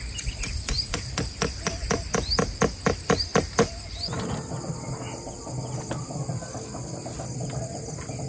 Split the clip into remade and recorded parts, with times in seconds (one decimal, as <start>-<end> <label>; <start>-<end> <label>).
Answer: 0.0-8.3 recorded